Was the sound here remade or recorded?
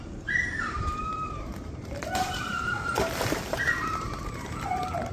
remade